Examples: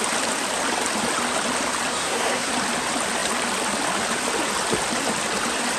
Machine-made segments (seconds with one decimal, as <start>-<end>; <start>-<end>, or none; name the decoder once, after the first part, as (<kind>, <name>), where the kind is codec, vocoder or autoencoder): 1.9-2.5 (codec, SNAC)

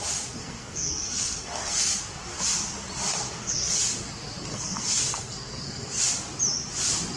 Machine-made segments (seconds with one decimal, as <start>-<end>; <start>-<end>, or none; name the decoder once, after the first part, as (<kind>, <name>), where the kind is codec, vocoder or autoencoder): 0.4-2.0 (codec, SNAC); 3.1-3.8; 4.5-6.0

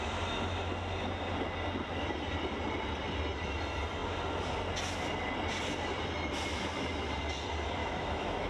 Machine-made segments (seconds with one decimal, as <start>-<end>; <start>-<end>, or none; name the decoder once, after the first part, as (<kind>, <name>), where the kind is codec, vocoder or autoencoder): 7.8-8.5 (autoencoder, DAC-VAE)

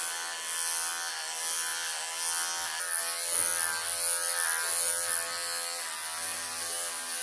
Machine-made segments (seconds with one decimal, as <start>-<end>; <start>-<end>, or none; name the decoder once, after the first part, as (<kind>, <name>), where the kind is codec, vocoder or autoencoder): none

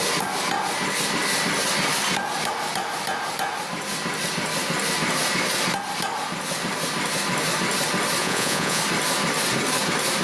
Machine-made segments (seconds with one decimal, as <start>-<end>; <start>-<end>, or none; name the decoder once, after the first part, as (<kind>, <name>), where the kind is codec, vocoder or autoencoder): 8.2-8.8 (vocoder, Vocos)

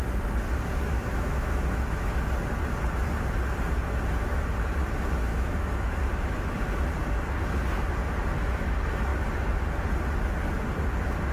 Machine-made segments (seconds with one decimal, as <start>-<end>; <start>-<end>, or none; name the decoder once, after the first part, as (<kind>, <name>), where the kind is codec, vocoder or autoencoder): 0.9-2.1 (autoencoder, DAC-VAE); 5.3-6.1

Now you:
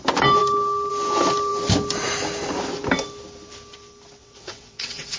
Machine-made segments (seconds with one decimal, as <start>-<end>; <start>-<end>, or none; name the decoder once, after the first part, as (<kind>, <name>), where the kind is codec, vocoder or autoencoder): 4.2-5.2 (vocoder, WaveNeXt)